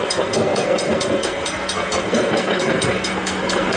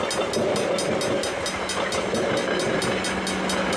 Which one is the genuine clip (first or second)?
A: second